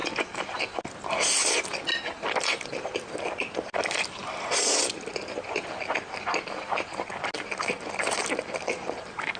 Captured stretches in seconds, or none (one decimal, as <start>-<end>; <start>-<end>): 0.0-9.4